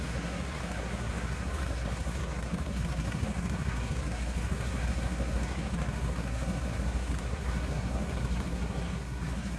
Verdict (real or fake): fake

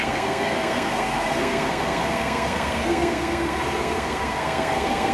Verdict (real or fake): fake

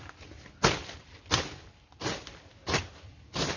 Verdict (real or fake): real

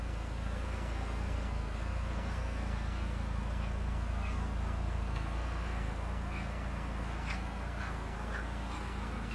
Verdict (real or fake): fake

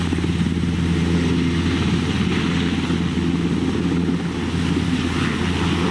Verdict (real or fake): real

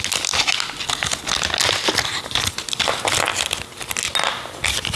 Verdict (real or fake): real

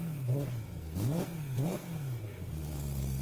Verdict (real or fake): fake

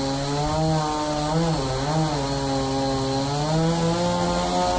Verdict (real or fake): real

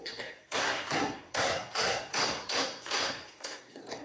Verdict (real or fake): fake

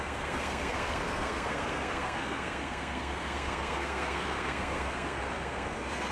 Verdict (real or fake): fake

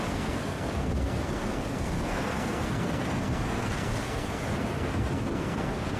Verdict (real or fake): fake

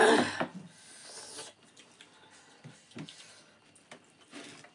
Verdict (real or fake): real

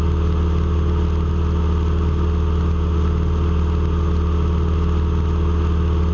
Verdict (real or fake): real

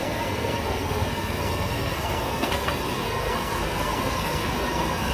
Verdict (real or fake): fake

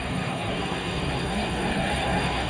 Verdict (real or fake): fake